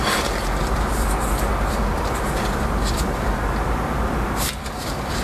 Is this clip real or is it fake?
fake